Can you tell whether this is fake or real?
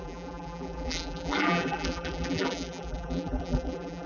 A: fake